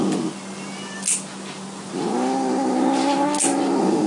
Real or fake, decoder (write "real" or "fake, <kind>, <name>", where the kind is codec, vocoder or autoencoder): real